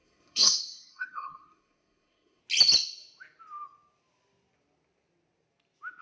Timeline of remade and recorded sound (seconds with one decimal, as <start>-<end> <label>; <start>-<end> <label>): 0.0-2.4 remade; 2.4-6.0 recorded